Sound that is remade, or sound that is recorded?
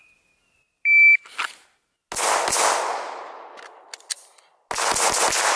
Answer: recorded